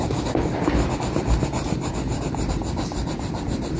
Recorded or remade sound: recorded